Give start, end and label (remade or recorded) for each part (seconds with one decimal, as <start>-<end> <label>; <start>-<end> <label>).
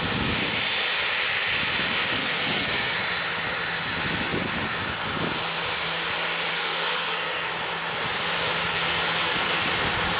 0.0-2.2 recorded; 2.2-3.0 remade; 3.0-6.5 recorded; 6.5-7.5 remade; 7.5-8.7 recorded; 8.7-9.6 remade; 9.6-10.2 recorded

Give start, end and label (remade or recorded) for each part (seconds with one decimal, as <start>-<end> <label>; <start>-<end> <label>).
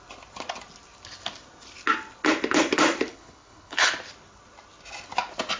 0.0-3.1 recorded; 3.1-3.9 remade; 3.9-5.6 recorded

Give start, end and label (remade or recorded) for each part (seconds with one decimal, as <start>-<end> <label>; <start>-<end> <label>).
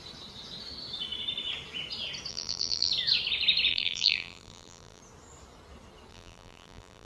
0.0-2.3 recorded; 2.3-2.9 remade; 2.9-3.7 recorded; 3.7-5.0 remade; 5.0-6.1 recorded; 6.1-7.1 remade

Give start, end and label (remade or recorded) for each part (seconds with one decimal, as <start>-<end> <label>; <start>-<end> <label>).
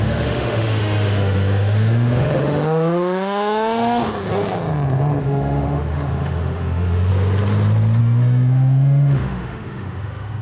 0.0-4.0 remade; 4.0-5.2 recorded; 5.2-7.1 remade; 7.1-8.0 recorded; 8.0-10.4 remade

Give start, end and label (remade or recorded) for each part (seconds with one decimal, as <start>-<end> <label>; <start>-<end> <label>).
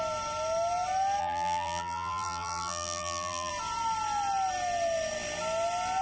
0.0-1.2 recorded; 1.2-3.5 remade; 3.5-6.0 recorded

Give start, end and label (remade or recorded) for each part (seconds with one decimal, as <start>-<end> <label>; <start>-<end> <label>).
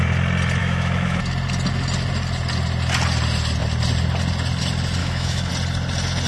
0.0-0.6 recorded; 0.6-1.2 remade; 1.2-5.0 recorded; 5.0-5.5 remade; 5.5-6.3 recorded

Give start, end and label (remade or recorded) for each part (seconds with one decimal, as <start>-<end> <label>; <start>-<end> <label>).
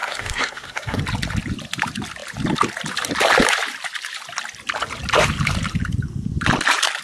0.0-1.0 remade; 1.0-7.0 recorded